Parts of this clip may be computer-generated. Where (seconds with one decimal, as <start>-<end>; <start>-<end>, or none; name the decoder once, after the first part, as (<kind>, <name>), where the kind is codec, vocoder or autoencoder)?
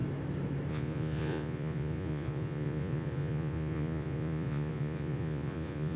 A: 0.7-6.0 (vocoder, Vocos)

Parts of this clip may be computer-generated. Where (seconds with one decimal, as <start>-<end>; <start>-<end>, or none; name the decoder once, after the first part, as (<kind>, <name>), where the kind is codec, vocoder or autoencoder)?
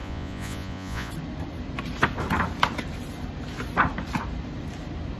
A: 0.0-1.1 (vocoder, Vocos)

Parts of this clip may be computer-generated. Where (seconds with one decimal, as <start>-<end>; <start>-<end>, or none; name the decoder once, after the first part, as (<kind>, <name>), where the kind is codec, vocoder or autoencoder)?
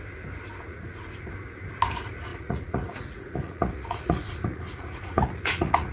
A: 0.7-1.3 (vocoder, Vocos); 2.3-5.9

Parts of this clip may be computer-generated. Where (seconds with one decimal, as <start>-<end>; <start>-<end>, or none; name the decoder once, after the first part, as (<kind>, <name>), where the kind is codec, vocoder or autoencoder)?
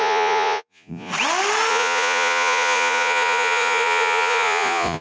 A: 0.0-1.1 (vocoder, Vocos); 1.7-5.0